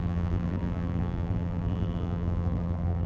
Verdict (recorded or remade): remade